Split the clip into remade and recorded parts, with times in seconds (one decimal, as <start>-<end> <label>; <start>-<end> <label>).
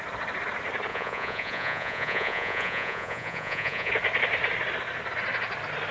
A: 0.0-0.9 recorded; 0.9-3.9 remade; 3.9-5.9 recorded